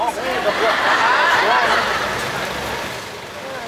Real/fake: real